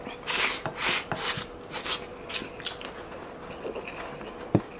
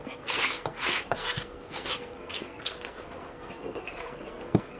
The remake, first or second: second